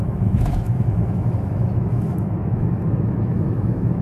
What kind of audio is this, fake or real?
fake